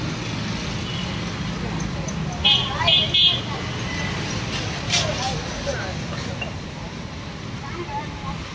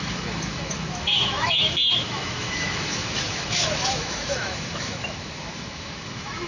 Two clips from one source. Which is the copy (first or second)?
second